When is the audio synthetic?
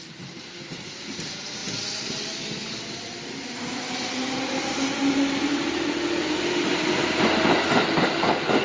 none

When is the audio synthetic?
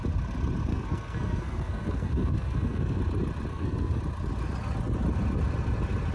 0.7-3.0 (codec, SNAC); 3.5-4.0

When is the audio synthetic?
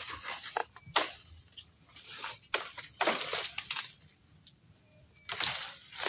none